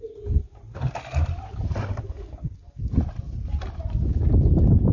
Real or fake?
real